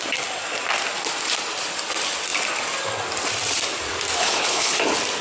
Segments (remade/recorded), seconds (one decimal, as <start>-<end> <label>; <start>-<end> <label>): 0.0-4.2 recorded; 4.2-4.8 remade; 4.8-5.2 recorded